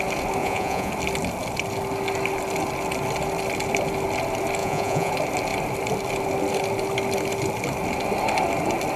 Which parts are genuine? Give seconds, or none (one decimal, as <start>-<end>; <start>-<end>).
0.0-0.4; 0.9-4.6; 5.1-9.0